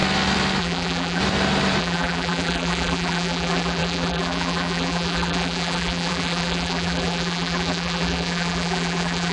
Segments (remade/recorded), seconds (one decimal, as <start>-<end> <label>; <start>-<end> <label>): 0.0-0.6 recorded; 0.6-1.2 remade; 1.2-1.8 recorded; 1.8-9.3 remade